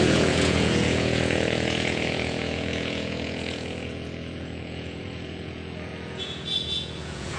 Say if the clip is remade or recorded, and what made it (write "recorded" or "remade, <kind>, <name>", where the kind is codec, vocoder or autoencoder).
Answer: remade, vocoder, Vocos